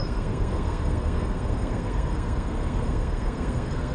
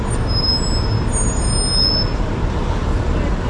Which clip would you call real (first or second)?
second